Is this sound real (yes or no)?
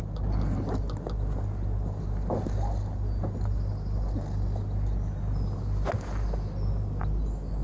yes